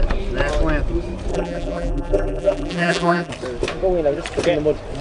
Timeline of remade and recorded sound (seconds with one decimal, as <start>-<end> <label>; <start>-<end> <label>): 0.0-1.3 recorded; 1.3-3.3 remade; 3.3-5.0 recorded